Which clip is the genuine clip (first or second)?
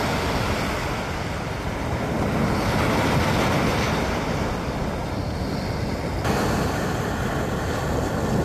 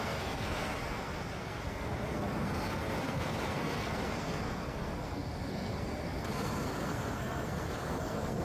first